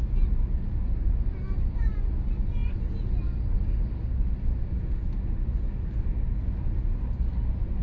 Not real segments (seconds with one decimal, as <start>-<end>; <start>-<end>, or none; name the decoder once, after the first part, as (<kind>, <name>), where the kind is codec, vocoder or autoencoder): none